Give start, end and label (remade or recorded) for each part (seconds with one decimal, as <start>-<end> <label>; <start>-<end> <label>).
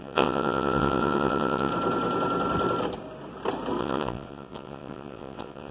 0.0-1.7 remade; 1.7-3.8 recorded; 3.8-5.7 remade